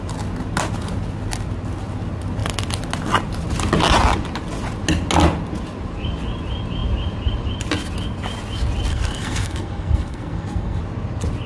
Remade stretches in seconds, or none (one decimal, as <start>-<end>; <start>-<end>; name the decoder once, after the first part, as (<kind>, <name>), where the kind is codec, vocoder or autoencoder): 8.9-10.8 (codec, SNAC)

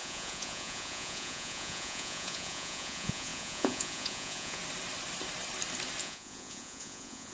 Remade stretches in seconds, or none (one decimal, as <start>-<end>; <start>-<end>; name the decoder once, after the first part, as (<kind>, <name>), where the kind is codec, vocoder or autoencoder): 0.0-4.6 (vocoder, Vocos); 6.0-7.3

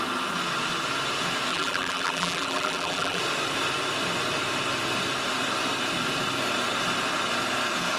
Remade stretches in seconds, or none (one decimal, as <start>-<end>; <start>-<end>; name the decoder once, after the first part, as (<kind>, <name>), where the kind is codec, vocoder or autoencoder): 1.5-3.2 (vocoder, BigVGAN v2)